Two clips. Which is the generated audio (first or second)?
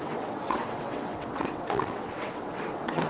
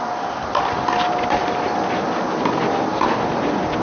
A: first